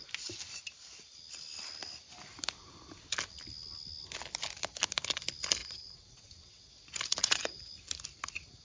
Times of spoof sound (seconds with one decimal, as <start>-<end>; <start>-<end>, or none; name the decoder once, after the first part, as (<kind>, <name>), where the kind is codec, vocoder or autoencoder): 5.6-6.7 (vocoder, WaveNeXt); 7.2-7.7